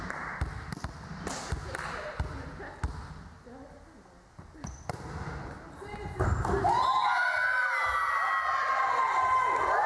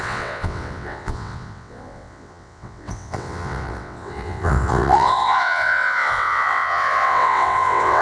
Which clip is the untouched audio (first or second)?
first